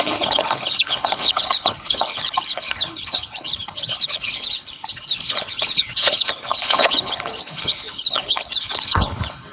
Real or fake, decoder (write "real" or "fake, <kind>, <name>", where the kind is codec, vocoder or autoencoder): fake, codec, HILCodec